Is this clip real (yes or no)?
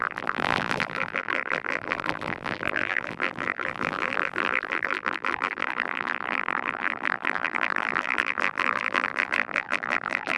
no